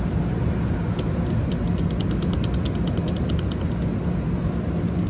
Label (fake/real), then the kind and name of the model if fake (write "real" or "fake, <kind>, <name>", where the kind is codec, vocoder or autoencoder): real